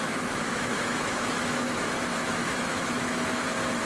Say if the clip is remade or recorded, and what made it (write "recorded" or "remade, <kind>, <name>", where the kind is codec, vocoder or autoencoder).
remade, autoencoder, DAC-VAE